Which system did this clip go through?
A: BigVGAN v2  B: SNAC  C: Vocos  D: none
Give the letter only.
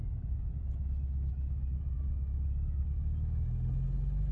D